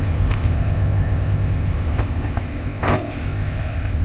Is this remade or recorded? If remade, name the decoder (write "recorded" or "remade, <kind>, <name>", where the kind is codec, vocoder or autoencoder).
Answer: remade, codec, ZipCodec